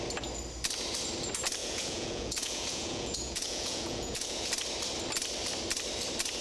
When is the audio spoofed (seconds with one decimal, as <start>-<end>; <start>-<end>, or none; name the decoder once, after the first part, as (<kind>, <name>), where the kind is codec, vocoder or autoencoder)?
1.6-4.5 (vocoder, Vocos)